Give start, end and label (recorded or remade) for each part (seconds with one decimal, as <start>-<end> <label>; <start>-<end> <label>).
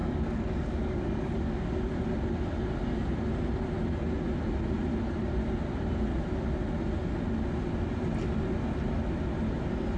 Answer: 0.0-1.7 remade; 1.7-10.0 recorded